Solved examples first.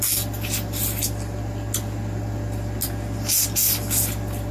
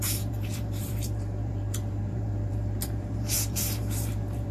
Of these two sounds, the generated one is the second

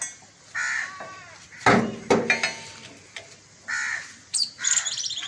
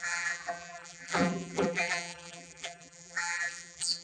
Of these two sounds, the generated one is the second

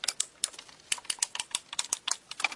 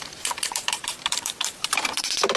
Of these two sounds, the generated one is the second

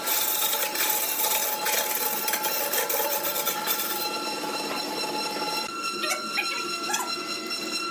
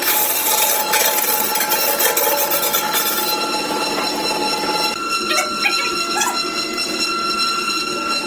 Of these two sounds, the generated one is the first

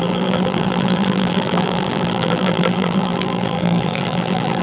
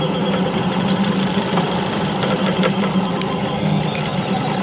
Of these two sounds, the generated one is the first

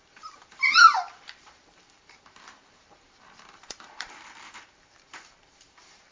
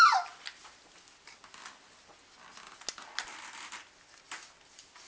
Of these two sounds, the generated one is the first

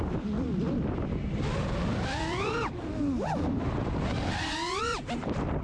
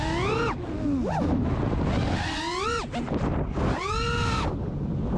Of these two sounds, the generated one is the first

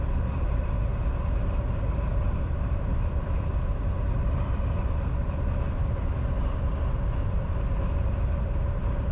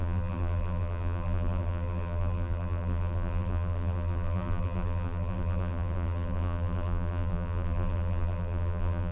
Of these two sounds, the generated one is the second